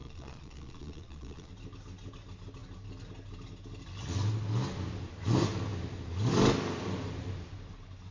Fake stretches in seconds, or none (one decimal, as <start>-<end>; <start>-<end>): 0.0-1.5

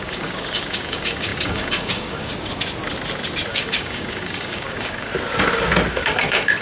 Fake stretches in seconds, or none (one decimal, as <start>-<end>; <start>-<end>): 0.0-2.3; 3.5-5.1; 5.9-6.6

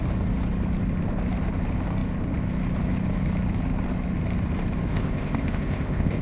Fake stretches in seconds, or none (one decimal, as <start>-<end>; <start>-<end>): 4.9-6.2

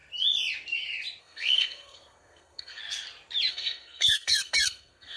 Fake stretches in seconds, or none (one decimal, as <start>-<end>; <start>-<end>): 1.2-2.8; 3.5-5.2

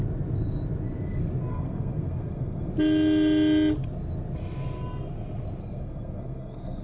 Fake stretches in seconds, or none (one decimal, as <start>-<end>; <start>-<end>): 1.5-2.7; 5.6-6.8

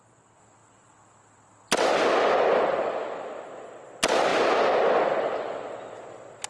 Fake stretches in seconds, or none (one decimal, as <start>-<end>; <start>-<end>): none

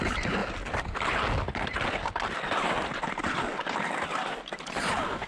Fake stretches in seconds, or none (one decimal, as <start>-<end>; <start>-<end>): none